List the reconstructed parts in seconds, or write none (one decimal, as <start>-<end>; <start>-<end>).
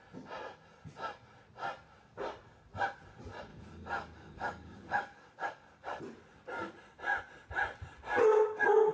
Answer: 3.5-6.0